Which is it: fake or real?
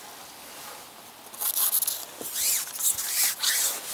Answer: real